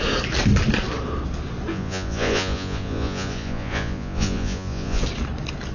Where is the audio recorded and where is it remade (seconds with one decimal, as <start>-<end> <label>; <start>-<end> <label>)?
0.0-1.7 recorded; 1.7-5.0 remade; 5.0-5.7 recorded